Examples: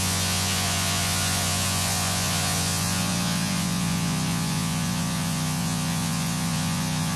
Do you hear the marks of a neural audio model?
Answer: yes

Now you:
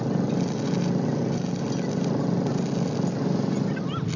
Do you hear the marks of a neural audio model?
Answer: no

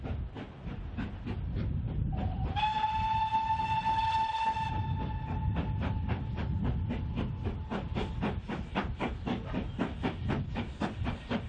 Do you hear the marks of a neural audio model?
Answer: no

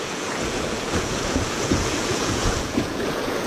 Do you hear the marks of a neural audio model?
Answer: yes